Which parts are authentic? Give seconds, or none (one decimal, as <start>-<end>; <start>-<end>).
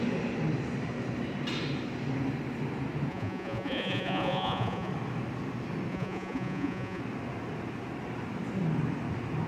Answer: 0.0-3.1; 4.9-5.9; 7.0-9.5